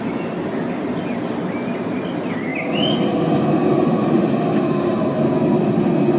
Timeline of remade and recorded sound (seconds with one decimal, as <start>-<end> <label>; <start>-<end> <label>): 0.0-6.2 recorded